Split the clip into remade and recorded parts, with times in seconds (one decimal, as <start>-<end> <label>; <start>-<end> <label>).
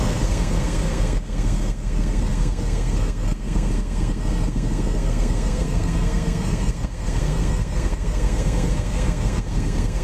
0.0-10.0 remade